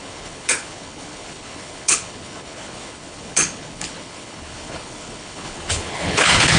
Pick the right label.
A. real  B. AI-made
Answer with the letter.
B